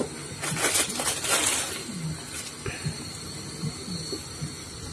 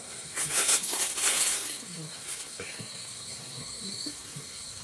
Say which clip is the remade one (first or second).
second